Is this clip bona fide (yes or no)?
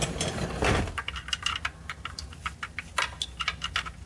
yes